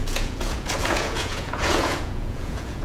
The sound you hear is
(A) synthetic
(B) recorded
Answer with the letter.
A